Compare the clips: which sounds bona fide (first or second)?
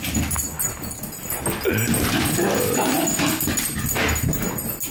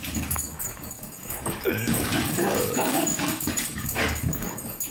first